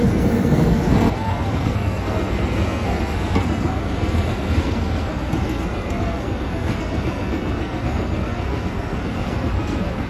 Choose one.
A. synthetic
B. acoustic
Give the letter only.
A